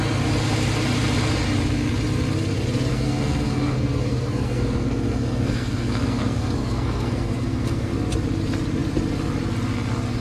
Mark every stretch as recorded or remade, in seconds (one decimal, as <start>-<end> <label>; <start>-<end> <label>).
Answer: 0.0-2.9 recorded; 2.9-7.9 remade; 7.9-10.2 recorded

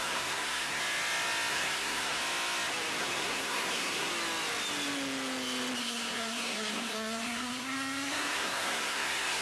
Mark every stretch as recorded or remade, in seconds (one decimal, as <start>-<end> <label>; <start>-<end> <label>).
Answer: 0.0-0.8 remade; 0.8-1.5 recorded; 1.5-2.2 remade; 2.2-3.0 recorded; 3.0-4.1 remade; 4.1-5.8 recorded; 5.8-9.4 remade